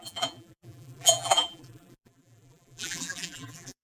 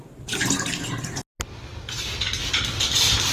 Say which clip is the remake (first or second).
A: first